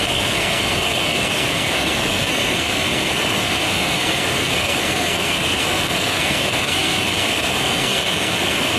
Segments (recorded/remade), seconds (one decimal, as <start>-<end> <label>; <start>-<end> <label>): 0.0-8.8 remade